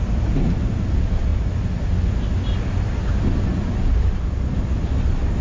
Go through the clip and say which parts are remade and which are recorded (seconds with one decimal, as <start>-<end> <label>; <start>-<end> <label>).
0.0-5.4 recorded